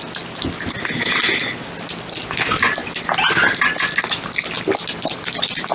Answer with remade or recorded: recorded